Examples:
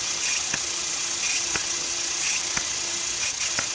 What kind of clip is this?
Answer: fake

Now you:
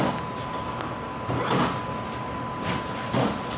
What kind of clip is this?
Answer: real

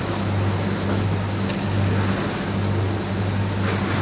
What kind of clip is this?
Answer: real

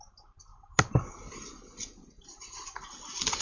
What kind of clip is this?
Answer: real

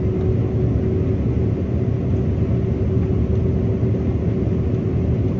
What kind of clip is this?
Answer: real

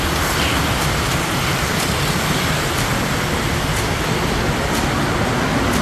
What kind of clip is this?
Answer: real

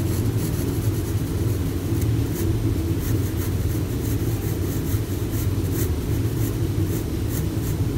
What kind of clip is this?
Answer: real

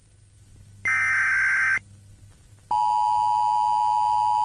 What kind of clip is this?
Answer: real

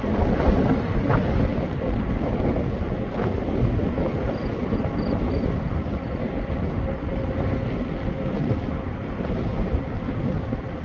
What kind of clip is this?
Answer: real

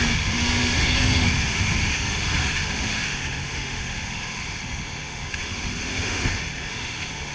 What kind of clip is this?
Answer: fake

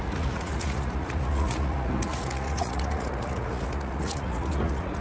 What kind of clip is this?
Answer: fake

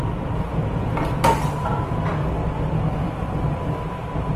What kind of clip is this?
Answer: real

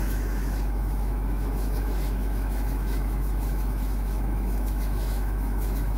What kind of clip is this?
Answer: fake